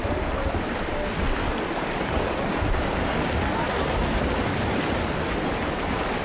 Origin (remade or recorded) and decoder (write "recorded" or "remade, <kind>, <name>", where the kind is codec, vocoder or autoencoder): recorded